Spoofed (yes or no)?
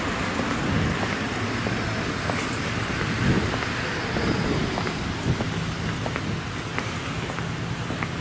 no